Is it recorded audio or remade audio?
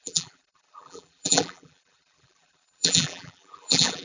remade